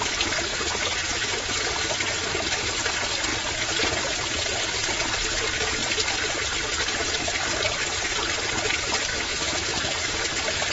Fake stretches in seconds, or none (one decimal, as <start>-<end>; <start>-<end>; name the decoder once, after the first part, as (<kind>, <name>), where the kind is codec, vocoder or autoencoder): 0.5-1.6 (autoencoder, DAC-VAE); 9.1-10.2